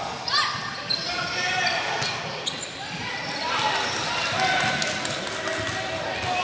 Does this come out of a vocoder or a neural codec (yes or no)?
no